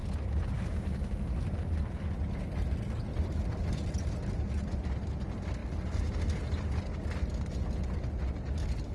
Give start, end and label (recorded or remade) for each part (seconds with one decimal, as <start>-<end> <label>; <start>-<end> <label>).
0.0-0.5 remade; 0.5-3.1 recorded; 3.1-3.6 remade; 3.6-8.9 recorded